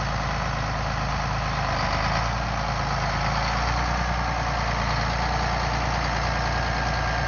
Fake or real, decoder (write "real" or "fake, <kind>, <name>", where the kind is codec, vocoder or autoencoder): real